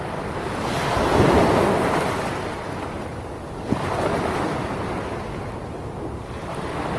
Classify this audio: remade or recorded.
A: recorded